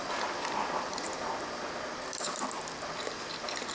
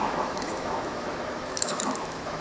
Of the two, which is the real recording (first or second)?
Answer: first